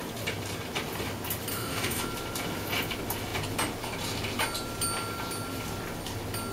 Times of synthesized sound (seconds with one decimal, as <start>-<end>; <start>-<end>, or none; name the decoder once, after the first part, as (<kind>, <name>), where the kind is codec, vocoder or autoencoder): 1.5-2.0 (autoencoder, DAC-VAE)